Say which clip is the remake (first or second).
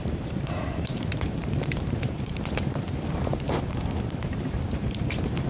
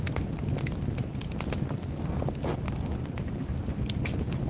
first